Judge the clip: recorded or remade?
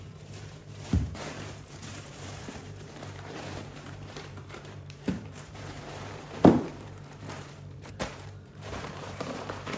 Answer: remade